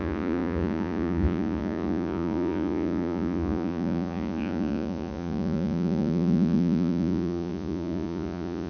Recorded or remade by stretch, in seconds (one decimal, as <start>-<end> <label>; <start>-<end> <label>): 0.0-8.7 remade